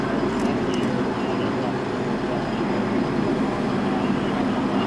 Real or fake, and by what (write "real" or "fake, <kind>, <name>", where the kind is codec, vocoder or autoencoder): real